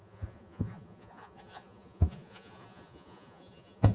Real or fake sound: fake